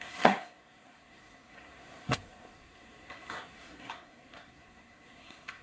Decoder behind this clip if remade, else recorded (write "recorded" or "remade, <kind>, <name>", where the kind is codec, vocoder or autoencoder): remade, codec, SNAC